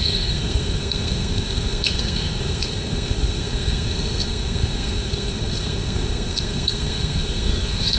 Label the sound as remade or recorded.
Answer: remade